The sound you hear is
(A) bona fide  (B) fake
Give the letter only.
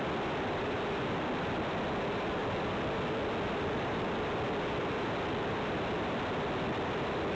A